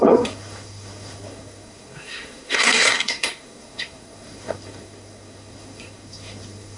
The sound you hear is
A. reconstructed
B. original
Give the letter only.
A